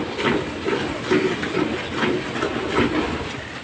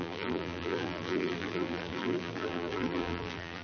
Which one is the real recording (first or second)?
first